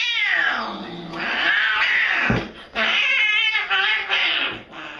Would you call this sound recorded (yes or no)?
yes